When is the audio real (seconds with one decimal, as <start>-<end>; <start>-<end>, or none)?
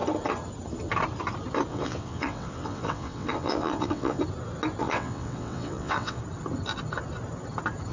0.0-1.7; 4.2-4.8; 6.2-7.9